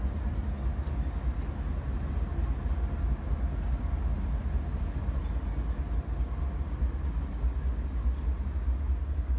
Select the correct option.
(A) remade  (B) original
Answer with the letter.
B